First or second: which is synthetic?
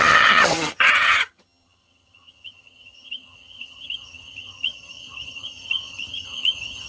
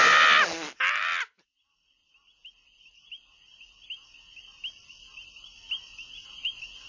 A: first